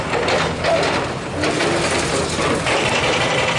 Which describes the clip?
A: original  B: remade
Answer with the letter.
A